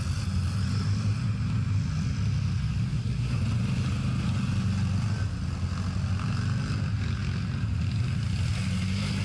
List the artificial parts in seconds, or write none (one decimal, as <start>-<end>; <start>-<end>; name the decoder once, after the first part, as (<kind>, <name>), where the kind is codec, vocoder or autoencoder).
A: 2.9-3.4 (codec, SNAC)